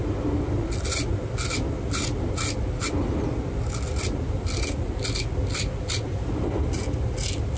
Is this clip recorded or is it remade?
recorded